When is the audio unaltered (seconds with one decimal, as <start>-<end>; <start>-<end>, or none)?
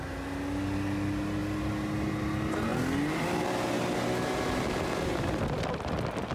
0.0-6.3